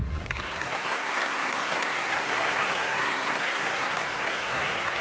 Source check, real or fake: fake